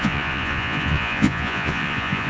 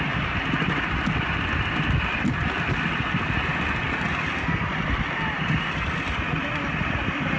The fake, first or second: first